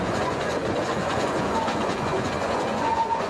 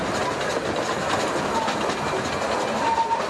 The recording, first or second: second